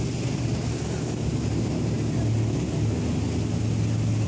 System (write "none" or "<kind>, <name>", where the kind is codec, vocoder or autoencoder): none